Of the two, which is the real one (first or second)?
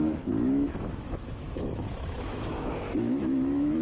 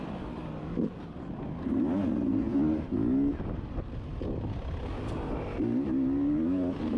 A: second